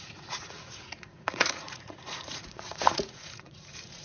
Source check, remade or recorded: remade